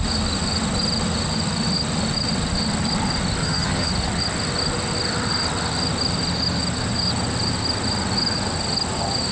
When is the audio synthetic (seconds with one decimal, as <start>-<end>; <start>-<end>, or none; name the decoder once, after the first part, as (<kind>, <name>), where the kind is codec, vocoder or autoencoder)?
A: 3.4-3.9 (vocoder, HiFi-GAN)

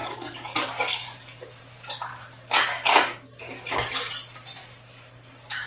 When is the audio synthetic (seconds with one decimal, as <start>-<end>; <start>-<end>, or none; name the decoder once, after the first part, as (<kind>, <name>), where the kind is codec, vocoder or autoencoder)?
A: 0.0-1.6 (codec, DAC); 2.1-4.1; 4.6-5.7

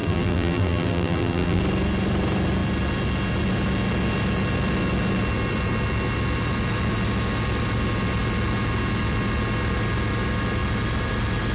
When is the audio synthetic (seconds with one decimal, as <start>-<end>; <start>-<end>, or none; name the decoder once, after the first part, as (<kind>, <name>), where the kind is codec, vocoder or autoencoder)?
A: 0.0-1.6 (vocoder, BigVGAN v2)